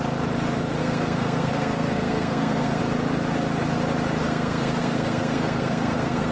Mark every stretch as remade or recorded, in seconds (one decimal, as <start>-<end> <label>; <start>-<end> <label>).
0.0-0.8 recorded; 0.8-2.8 remade; 2.8-4.2 recorded; 4.2-6.3 remade